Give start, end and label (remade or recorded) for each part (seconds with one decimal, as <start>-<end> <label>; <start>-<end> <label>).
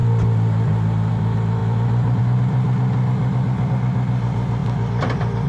0.0-5.5 recorded